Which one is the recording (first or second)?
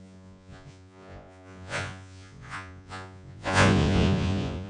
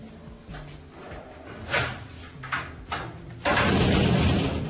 second